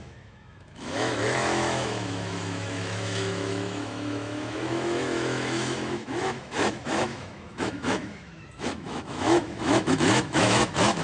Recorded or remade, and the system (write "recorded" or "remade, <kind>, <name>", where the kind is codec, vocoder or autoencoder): remade, autoencoder, DAC-VAE